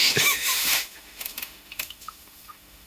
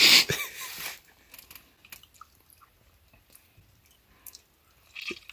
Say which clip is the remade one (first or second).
first